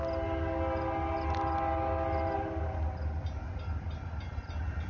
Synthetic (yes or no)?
no